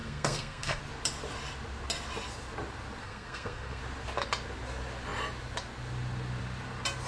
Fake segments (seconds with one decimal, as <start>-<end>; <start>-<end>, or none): 0.0-0.8; 3.0-3.8

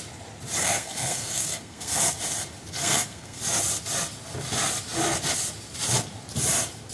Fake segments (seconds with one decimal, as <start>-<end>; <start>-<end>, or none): 0.6-2.0; 2.8-3.4

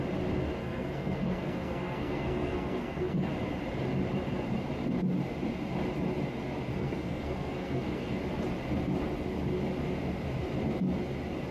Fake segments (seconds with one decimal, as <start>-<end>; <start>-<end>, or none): 0.6-3.3; 6.7-8.2

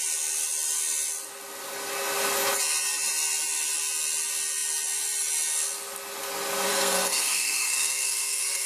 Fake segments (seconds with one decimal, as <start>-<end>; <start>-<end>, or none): 6.7-8.7

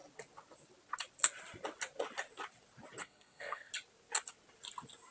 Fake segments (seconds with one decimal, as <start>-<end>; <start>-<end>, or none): 3.0-3.7

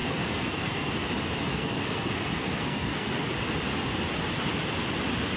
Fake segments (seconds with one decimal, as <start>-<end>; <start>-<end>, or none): 0.0-0.9; 1.5-3.2

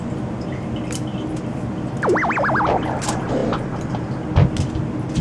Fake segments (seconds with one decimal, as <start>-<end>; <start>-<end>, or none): none